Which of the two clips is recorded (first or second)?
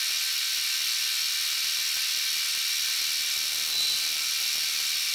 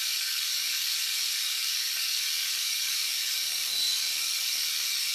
first